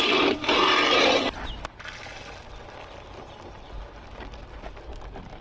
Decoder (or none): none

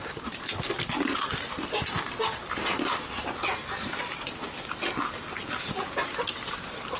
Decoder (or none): none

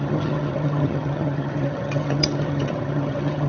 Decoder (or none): vocoder, HiFi-GAN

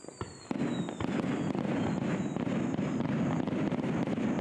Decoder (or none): none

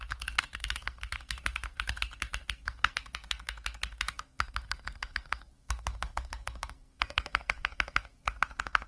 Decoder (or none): codec, SNAC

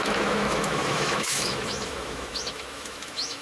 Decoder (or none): autoencoder, DAC-VAE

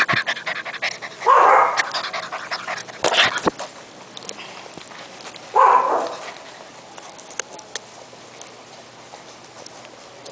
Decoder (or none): none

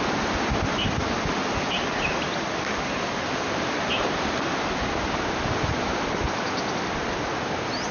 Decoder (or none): none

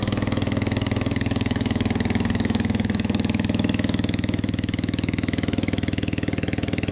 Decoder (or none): autoencoder, DAC-VAE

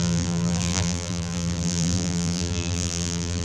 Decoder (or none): vocoder, BigVGAN v2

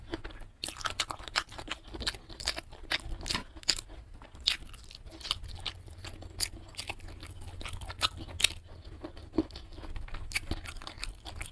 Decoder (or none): none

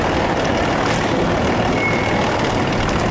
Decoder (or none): none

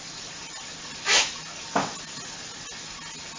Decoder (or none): none